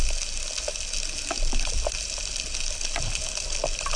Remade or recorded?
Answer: recorded